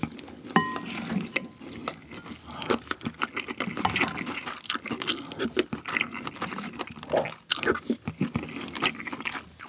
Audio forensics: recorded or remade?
recorded